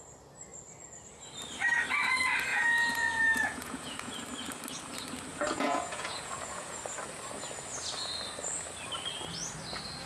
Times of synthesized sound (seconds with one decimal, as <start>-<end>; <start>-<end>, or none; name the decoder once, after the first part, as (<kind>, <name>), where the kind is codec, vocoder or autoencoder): 2.5-4.2 (vocoder, Vocos); 5.3-6.8